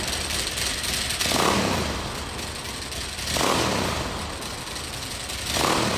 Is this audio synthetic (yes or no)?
no